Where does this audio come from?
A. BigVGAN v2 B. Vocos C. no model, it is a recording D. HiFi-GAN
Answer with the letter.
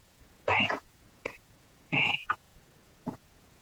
B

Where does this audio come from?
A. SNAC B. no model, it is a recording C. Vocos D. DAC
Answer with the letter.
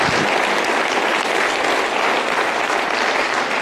B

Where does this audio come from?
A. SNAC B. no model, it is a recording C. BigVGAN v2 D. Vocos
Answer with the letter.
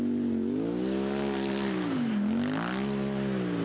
B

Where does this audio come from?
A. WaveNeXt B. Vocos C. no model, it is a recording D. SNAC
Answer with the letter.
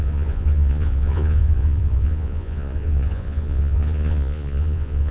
B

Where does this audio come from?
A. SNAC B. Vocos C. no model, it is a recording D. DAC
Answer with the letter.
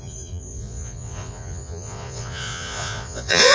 B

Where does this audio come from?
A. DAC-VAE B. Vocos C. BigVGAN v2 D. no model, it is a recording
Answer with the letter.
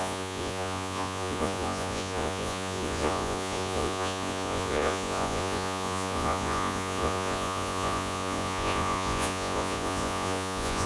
B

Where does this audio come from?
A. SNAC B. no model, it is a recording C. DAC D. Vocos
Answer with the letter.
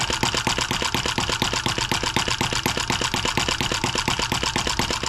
B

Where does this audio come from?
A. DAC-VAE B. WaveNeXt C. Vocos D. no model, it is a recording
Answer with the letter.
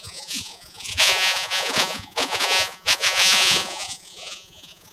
C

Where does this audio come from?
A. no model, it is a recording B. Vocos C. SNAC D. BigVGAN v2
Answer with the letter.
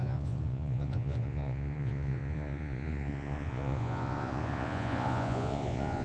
B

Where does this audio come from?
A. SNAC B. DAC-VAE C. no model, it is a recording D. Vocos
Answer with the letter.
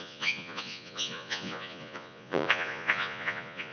D